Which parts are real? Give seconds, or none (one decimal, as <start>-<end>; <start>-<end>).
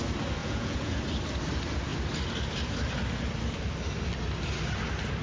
0.0-0.4; 1.0-5.2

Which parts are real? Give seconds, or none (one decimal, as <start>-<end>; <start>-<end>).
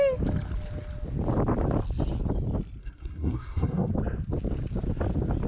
0.0-2.8; 3.9-5.5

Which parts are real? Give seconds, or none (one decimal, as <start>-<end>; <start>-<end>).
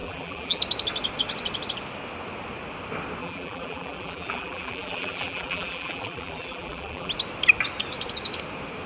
0.6-3.2; 7.1-8.9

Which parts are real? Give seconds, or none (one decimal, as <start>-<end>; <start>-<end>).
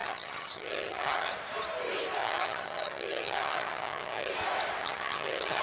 1.3-2.2; 4.3-4.8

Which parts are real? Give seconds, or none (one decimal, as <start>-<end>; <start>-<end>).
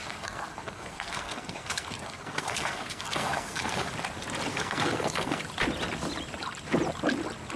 3.9-4.5; 5.4-7.6